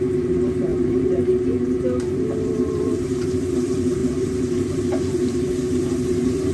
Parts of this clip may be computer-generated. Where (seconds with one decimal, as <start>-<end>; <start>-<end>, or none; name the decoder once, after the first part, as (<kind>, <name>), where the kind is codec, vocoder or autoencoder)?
0.0-6.5 (vocoder, BigVGAN v2)